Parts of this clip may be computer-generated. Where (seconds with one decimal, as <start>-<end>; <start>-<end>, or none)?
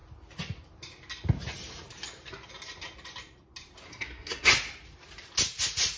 3.9-4.5